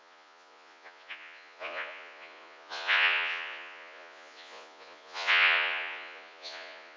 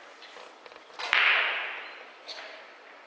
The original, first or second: second